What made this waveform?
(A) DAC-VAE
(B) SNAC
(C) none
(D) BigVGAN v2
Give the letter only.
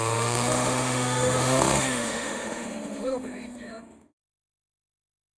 A